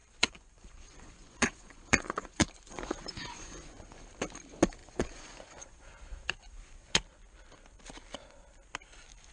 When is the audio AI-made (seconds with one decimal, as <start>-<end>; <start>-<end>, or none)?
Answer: 0.0-4.0; 4.8-7.0